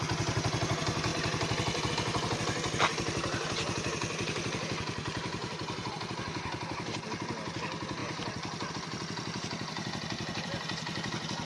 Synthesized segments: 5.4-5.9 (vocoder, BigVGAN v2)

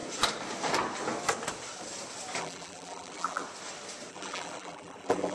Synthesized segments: 2.4-3.4 (vocoder, BigVGAN v2); 4.1-5.3

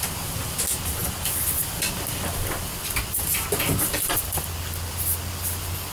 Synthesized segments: none

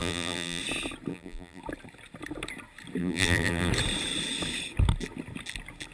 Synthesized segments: 0.0-0.6 (vocoder, BigVGAN v2); 1.1-1.6; 3.0-3.7

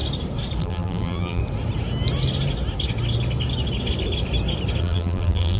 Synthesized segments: 0.6-1.4 (vocoder, BigVGAN v2); 4.8-5.6

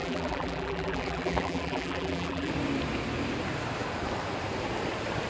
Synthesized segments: 0.0-2.5 (vocoder, BigVGAN v2)

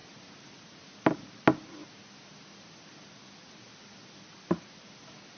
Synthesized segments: 0.0-0.8 (vocoder, BigVGAN v2); 1.8-4.4

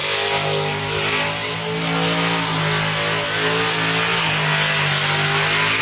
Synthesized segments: none